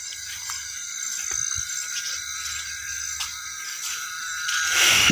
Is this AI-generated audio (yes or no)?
no